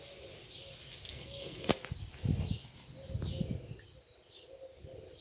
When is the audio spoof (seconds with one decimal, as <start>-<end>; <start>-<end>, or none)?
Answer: 1.1-1.7